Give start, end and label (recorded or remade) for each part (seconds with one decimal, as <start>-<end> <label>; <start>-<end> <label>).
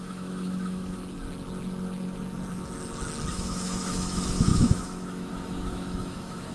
0.0-1.0 remade; 1.0-3.3 recorded; 3.3-6.5 remade